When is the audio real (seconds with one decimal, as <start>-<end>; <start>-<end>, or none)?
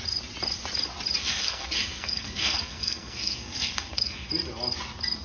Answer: 0.0-1.2; 4.3-5.2